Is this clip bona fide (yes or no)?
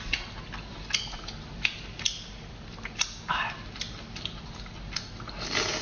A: yes